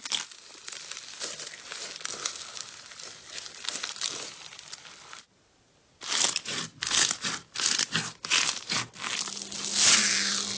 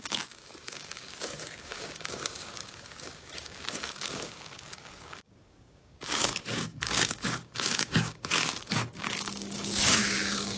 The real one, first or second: first